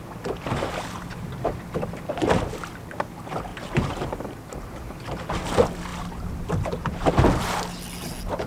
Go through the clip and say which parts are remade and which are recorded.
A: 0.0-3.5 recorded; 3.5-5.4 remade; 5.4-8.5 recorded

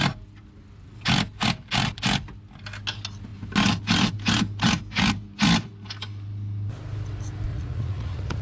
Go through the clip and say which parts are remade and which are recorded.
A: 0.0-7.5 recorded; 7.5-8.4 remade

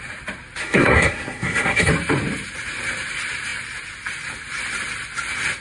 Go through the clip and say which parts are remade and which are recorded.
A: 0.0-0.6 recorded; 0.6-1.9 remade; 1.9-5.6 recorded

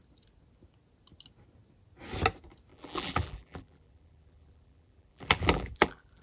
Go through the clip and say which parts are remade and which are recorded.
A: 0.0-2.7 recorded; 2.7-6.2 remade

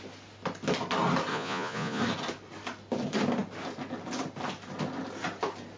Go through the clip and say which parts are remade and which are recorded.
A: 0.0-1.3 recorded; 1.3-2.0 remade; 2.0-5.8 recorded

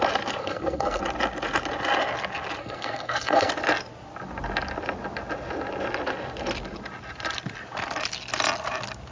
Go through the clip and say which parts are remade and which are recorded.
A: 0.0-0.4 recorded; 0.4-1.0 remade; 1.0-2.6 recorded; 2.6-3.5 remade; 3.5-9.1 recorded

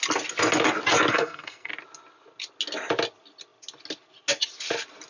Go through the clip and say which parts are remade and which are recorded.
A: 0.0-1.1 recorded; 1.1-1.7 remade; 1.7-5.1 recorded

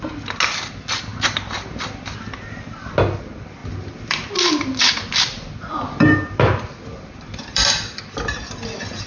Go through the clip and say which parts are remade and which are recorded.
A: 0.0-3.6 recorded; 3.6-8.0 remade; 8.0-9.1 recorded